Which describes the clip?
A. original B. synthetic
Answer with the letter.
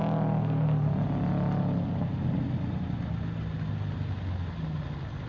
A